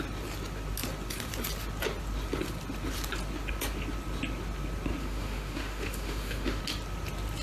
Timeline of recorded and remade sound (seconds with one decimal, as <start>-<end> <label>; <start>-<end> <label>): 0.0-5.0 recorded; 5.0-6.6 remade; 6.6-7.4 recorded